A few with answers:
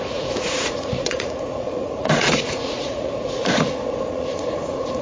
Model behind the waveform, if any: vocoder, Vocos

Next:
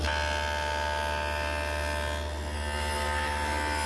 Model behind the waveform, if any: none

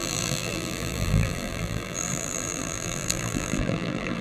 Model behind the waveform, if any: vocoder, BigVGAN v2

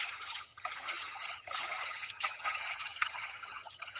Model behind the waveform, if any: vocoder, HiFi-GAN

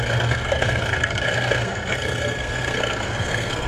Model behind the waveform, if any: codec, SNAC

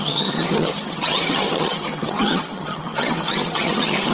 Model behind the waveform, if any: vocoder, HiFi-GAN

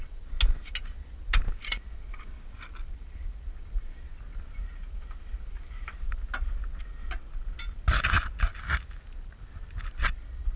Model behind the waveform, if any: none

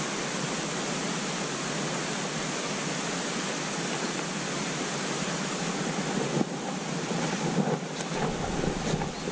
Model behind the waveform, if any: none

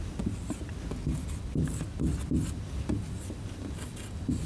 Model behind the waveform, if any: none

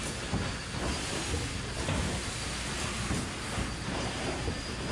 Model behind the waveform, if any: none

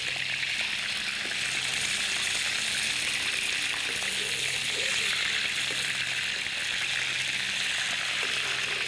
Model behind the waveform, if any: none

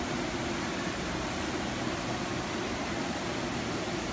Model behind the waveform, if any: none